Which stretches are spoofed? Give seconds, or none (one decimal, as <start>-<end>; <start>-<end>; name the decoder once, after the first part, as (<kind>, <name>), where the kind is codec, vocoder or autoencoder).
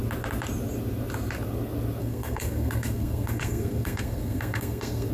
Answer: 2.0-5.1 (codec, SNAC)